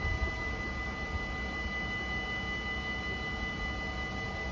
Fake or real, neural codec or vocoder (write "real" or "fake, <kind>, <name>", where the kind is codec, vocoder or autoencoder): real